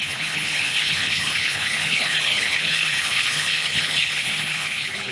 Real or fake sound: fake